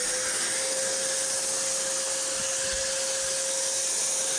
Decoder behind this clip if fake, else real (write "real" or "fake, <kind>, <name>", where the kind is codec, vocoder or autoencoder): real